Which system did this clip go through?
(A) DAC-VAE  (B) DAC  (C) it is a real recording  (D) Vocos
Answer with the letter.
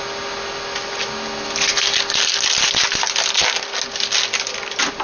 C